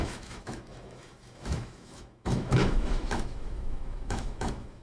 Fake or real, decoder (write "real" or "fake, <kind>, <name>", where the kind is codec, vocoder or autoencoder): fake, autoencoder, DAC-VAE